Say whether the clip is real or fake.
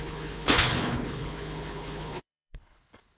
fake